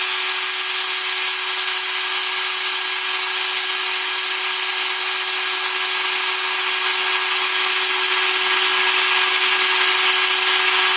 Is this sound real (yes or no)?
yes